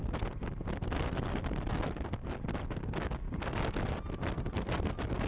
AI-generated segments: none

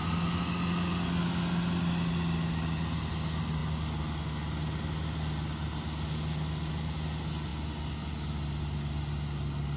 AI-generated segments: none

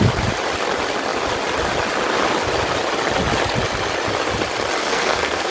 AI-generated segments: 4.8-5.5 (codec, SNAC)